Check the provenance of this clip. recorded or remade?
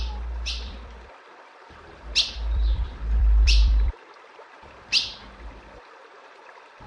remade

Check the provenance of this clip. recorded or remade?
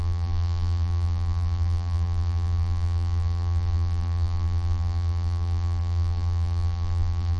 remade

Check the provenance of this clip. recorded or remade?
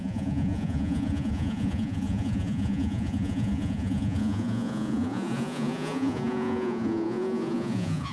remade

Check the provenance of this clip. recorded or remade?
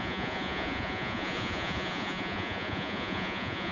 remade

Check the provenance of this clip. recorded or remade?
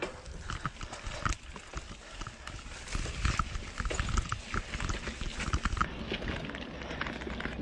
recorded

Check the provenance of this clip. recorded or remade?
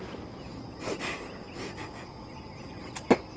recorded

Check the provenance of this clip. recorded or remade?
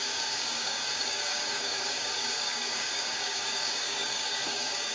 remade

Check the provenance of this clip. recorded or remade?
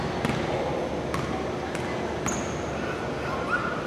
recorded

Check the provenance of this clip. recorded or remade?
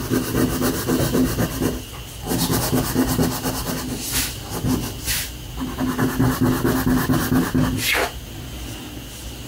recorded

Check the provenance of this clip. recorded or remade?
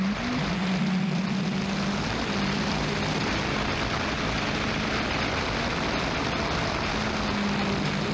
recorded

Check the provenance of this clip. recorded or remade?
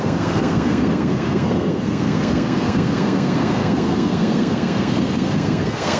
remade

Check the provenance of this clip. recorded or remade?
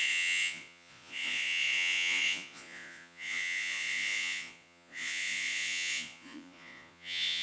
remade